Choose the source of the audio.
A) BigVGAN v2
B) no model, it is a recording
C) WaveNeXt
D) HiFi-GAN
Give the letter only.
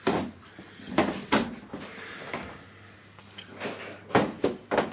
B